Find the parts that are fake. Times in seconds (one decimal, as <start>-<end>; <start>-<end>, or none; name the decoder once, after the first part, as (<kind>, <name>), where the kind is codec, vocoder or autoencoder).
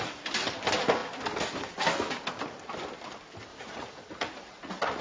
3.5-5.0 (vocoder, Vocos)